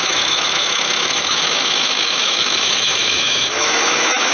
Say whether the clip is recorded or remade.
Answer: remade